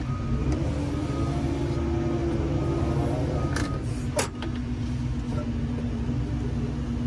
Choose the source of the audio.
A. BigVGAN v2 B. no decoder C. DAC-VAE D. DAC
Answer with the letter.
B